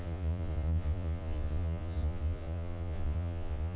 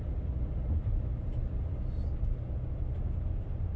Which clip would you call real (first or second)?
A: second